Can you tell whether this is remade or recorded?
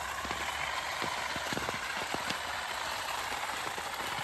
recorded